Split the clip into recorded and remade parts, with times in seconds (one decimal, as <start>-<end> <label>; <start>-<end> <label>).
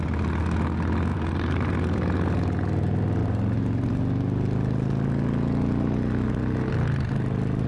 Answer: 0.0-1.1 recorded; 1.1-2.0 remade; 2.0-3.2 recorded; 3.2-3.9 remade; 3.9-7.7 recorded